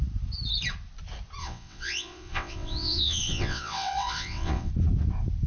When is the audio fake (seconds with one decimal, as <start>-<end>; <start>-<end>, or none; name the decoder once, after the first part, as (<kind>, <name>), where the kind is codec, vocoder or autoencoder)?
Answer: 1.4-4.7 (vocoder, WaveNeXt)